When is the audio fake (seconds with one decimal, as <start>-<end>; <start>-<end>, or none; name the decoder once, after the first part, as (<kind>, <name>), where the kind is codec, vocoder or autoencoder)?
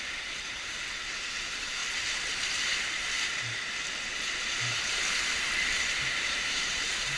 0.0-1.8 (vocoder, BigVGAN v2); 3.9-7.2